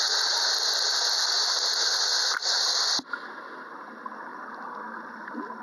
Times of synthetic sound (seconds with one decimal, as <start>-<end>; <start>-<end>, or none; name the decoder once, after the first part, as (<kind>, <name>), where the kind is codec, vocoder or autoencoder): 4.3-5.6 (vocoder, BigVGAN v2)